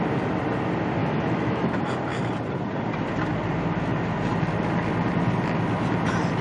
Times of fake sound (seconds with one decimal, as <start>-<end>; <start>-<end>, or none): 1.0-1.8